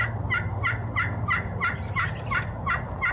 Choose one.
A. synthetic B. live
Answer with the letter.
B